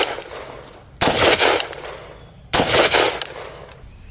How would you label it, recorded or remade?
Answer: recorded